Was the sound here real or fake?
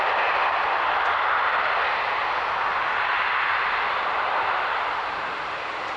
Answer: real